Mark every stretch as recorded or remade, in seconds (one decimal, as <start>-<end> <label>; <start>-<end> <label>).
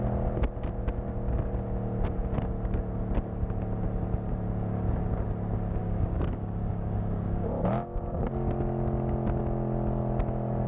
0.0-5.8 recorded; 5.8-7.5 remade; 7.5-10.7 recorded